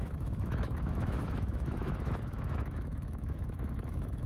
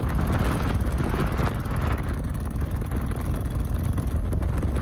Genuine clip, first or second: second